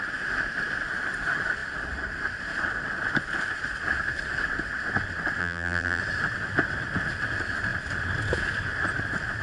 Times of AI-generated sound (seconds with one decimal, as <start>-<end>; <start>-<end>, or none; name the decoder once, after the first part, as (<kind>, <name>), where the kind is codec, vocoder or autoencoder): 5.4-6.0 (vocoder, BigVGAN v2)